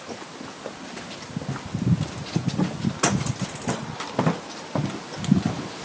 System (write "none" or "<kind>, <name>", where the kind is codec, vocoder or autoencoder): none